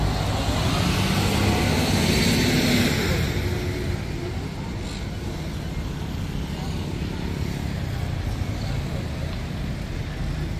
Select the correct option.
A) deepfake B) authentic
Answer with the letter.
B